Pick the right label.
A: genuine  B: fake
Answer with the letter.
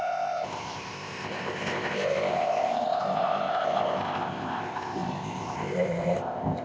B